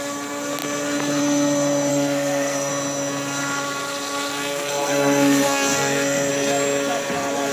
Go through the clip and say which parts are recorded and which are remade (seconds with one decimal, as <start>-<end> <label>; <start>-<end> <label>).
0.0-1.9 recorded; 1.9-2.7 remade; 2.7-4.4 recorded; 4.4-6.3 remade; 6.3-7.5 recorded